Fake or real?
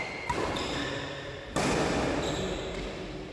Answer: real